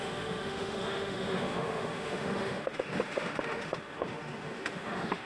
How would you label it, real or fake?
fake